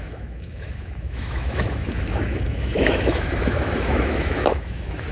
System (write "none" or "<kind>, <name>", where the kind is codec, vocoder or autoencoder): autoencoder, DAC-VAE